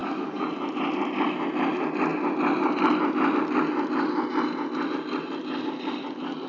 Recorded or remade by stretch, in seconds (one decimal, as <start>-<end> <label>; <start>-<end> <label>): 0.0-0.5 remade; 0.5-6.5 recorded